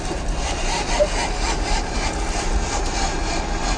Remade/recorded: remade